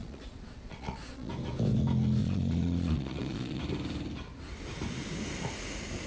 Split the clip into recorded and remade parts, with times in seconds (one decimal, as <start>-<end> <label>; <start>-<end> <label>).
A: 0.0-1.3 remade; 1.3-2.2 recorded; 2.2-3.6 remade; 3.6-6.1 recorded